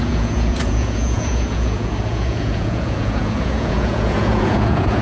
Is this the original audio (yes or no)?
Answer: no